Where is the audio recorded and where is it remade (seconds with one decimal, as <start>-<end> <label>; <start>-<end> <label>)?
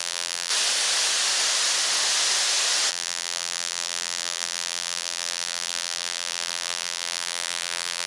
0.0-0.5 remade; 0.5-2.9 recorded; 2.9-8.1 remade